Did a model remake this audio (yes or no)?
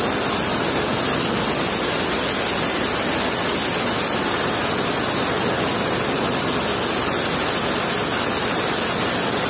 no